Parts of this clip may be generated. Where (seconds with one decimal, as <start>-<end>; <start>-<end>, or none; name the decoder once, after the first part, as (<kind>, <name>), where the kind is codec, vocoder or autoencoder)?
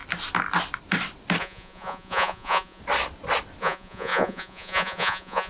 1.4-2.8 (vocoder, Vocos); 3.6-5.5